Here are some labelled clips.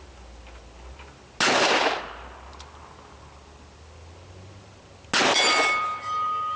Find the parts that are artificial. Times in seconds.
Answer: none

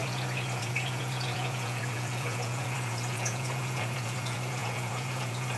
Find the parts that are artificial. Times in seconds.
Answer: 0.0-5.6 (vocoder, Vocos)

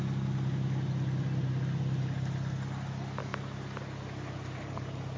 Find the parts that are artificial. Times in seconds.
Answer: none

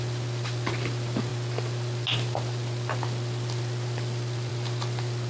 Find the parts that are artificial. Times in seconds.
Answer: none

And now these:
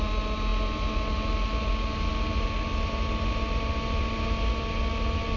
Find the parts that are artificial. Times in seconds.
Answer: none

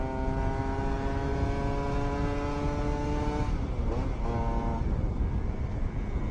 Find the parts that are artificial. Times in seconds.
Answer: none

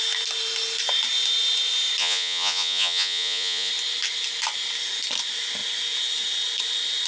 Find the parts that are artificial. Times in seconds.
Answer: 2.0-3.7 (vocoder, Vocos)

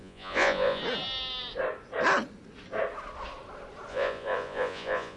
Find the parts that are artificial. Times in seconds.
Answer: 0.0-0.8 (vocoder, Vocos); 3.9-5.2